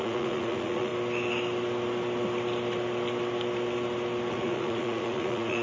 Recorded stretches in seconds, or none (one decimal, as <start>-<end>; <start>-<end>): 0.9-4.3